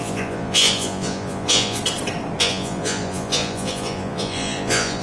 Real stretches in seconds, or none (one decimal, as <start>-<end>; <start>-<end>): 1.8-2.4